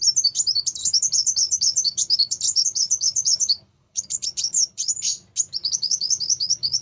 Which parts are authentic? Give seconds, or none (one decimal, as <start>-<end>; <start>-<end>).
0.0-0.8; 4.9-5.6